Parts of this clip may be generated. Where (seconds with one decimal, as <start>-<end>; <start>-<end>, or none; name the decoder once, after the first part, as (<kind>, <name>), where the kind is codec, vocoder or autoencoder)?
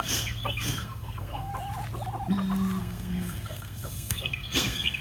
0.0-1.5 (codec, SNAC); 2.8-5.0